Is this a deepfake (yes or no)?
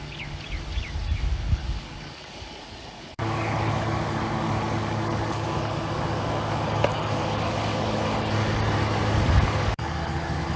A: yes